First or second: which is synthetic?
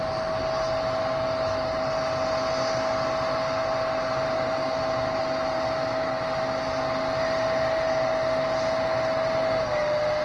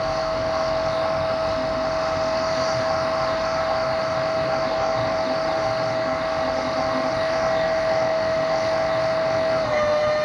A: second